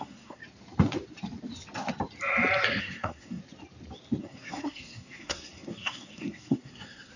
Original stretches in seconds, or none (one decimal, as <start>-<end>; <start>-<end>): 0.4-2.8; 3.4-4.2